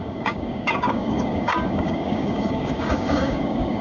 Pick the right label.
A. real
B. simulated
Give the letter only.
B